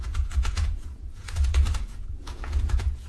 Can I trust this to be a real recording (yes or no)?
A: no